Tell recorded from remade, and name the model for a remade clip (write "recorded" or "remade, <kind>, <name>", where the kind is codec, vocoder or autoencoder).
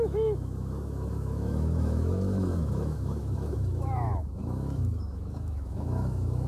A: remade, autoencoder, DAC-VAE